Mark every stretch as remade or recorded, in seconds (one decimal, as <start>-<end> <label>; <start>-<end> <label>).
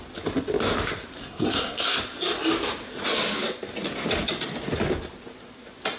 0.0-1.2 recorded; 1.2-2.0 remade; 2.0-6.0 recorded